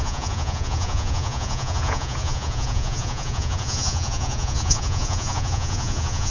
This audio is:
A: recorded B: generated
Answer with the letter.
B